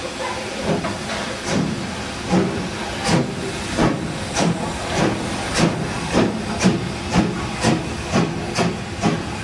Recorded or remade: remade